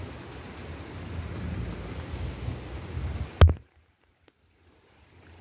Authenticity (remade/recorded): recorded